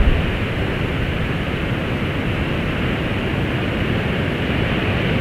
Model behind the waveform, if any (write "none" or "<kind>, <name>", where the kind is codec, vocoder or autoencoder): none